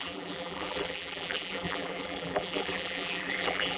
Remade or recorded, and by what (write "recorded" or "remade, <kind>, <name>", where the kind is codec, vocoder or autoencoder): remade, vocoder, BigVGAN v2